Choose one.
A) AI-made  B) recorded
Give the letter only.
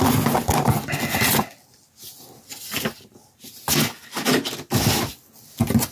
B